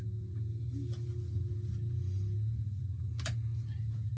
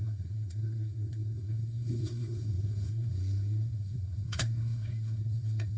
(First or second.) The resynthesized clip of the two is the second